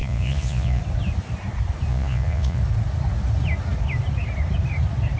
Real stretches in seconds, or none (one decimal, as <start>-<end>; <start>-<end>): 0.8-1.9; 2.6-5.2